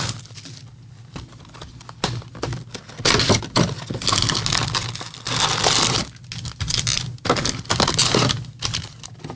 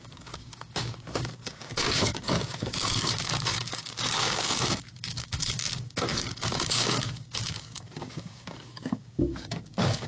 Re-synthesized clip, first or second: second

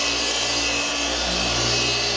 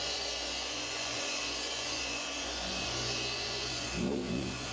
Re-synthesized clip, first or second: second